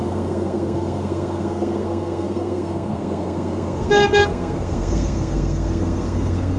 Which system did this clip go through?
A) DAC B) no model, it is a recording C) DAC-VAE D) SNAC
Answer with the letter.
D